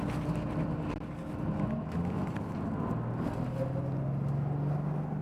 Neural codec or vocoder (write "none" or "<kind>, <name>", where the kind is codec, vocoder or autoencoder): none